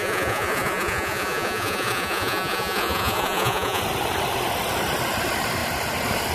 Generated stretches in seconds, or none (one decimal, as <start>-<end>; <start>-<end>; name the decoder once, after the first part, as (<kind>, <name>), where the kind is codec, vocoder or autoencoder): 0.0-3.8 (vocoder, Vocos)